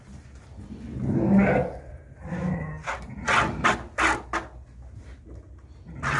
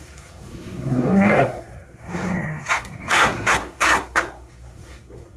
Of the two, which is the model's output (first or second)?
second